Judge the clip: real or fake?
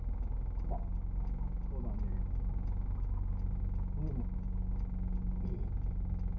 real